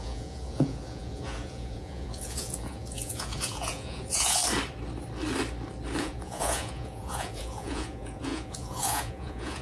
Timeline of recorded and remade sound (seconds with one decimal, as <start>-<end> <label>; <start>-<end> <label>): 0.0-4.4 remade; 4.4-6.0 recorded; 6.0-9.6 remade